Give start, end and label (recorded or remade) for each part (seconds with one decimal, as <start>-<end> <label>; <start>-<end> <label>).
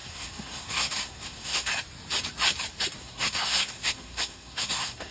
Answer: 0.0-1.7 remade; 1.7-3.0 recorded; 3.0-5.1 remade